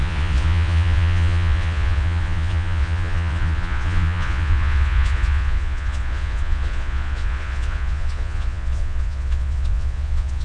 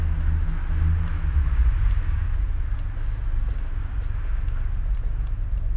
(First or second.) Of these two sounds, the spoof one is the first